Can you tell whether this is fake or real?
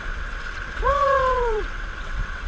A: fake